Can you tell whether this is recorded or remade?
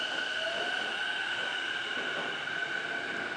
recorded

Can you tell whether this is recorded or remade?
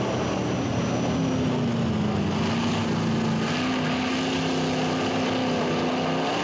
recorded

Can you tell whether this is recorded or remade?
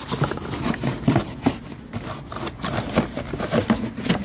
recorded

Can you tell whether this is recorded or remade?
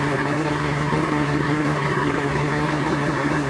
remade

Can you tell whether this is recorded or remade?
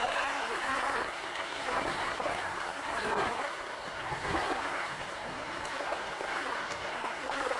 remade